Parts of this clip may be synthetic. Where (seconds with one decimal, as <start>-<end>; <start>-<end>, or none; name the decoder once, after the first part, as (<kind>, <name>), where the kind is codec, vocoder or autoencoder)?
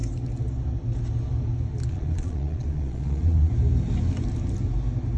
1.9-3.5 (vocoder, Vocos)